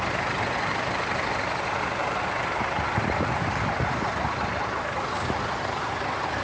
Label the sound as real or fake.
real